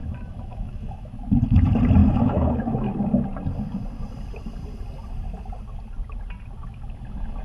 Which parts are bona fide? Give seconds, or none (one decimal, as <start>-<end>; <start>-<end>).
1.1-2.0; 2.9-7.4